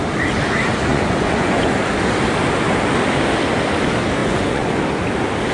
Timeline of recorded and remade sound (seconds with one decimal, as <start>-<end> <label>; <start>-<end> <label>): 0.0-0.9 recorded; 0.9-1.8 remade; 1.8-4.2 recorded; 4.2-4.8 remade; 4.8-5.5 recorded